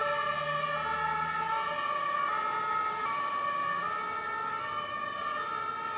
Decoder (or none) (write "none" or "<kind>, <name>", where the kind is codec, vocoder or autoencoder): none